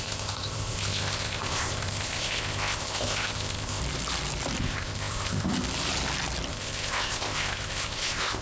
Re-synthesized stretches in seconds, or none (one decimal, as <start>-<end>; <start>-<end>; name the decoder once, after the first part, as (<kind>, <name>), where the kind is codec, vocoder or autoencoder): 0.0-3.8 (codec, ZipCodec); 4.6-5.5; 6.5-8.4